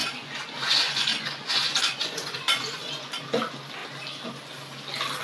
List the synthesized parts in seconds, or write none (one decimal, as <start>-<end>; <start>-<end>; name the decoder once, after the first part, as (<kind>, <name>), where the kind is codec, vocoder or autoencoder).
0.0-3.1 (vocoder, Vocos)